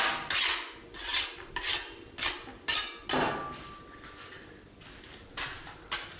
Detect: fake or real real